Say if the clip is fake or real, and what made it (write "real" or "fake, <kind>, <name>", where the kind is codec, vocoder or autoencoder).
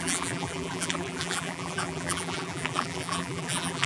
fake, vocoder, BigVGAN v2